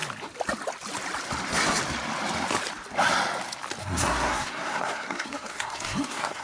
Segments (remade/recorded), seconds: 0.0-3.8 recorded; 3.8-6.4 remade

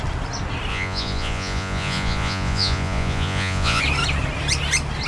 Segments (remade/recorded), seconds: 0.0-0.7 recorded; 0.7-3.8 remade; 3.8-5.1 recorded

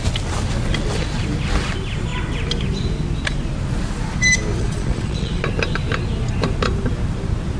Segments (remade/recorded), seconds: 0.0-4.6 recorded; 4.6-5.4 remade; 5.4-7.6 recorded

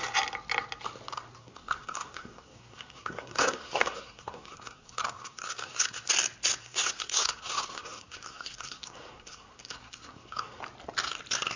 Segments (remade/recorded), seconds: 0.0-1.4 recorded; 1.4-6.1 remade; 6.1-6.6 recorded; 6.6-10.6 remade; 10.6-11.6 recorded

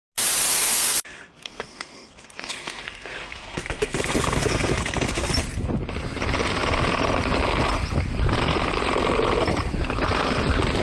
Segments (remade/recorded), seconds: 0.0-0.5 recorded; 0.5-5.3 remade; 5.3-10.8 recorded

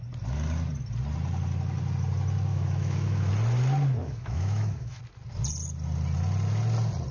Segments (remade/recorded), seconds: 0.0-2.5 recorded; 2.5-3.3 remade; 3.3-4.0 recorded; 4.0-5.0 remade; 5.0-7.1 recorded

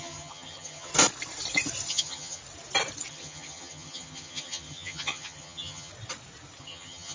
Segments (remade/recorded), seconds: 0.0-0.9 remade; 0.9-1.9 recorded; 1.9-2.4 remade; 2.4-3.1 recorded; 3.1-5.9 remade; 5.9-6.6 recorded; 6.6-7.1 remade

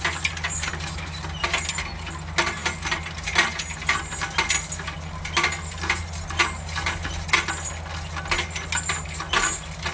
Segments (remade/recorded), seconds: 0.0-9.9 recorded